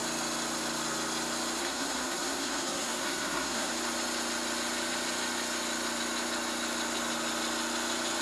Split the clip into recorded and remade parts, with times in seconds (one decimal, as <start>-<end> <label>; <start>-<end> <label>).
0.0-1.6 recorded; 1.6-3.7 remade; 3.7-8.2 recorded